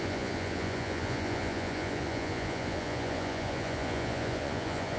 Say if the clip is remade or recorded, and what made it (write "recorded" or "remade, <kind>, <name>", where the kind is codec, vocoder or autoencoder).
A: remade, vocoder, Vocos